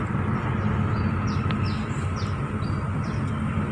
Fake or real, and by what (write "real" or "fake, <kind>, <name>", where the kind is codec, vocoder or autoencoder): real